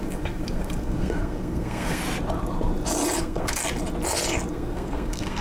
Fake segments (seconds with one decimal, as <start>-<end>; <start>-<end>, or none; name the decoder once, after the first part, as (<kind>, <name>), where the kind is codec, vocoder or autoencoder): 0.0-2.0 (codec, SNAC); 3.2-3.6; 4.5-5.4